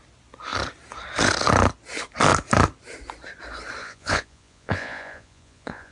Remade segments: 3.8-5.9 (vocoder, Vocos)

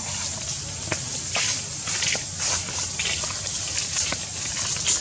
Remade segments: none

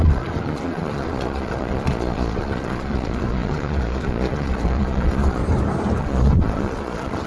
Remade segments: 0.0-5.4 (vocoder, Vocos); 6.0-7.3

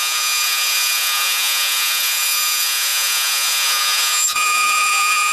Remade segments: 0.0-5.3 (vocoder, Vocos)

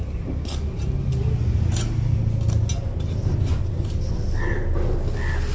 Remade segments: none

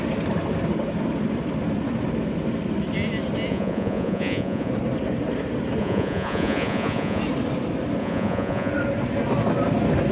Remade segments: 3.5-4.7 (vocoder, Vocos); 5.8-7.2; 8.0-8.7